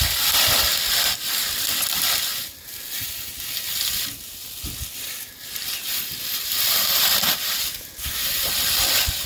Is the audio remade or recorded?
recorded